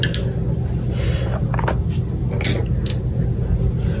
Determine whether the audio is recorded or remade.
recorded